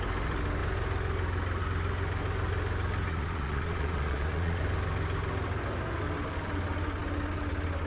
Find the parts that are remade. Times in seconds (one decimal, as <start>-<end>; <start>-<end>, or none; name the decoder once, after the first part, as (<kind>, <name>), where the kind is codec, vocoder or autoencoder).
3.1-4.6 (vocoder, Vocos)